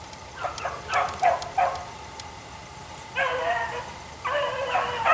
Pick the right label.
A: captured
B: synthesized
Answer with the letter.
A